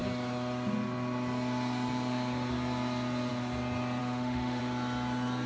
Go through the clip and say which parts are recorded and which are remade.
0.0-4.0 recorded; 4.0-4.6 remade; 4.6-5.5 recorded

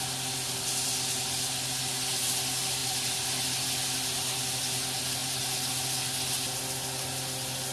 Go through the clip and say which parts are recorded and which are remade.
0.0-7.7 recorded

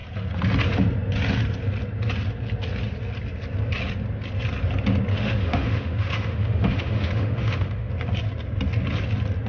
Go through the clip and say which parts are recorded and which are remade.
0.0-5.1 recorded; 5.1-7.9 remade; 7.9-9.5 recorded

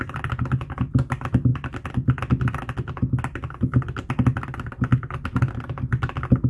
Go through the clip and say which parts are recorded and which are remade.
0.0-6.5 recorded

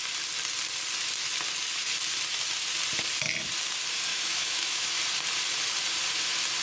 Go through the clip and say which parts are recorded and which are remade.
0.0-4.1 recorded; 4.1-4.9 remade; 4.9-6.6 recorded